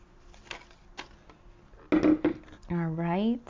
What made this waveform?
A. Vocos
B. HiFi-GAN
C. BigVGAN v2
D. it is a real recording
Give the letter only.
D